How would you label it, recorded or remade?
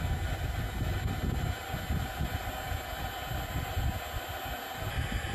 recorded